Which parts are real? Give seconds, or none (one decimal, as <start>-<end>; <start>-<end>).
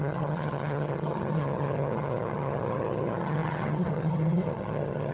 none